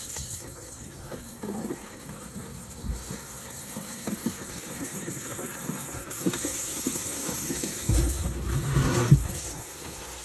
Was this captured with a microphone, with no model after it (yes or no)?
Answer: no